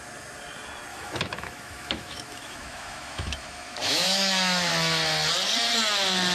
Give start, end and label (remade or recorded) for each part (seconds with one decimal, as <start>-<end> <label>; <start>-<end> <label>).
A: 0.0-0.9 recorded; 0.9-4.7 remade; 4.7-6.3 recorded